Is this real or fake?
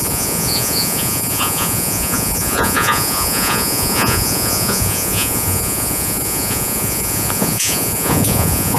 fake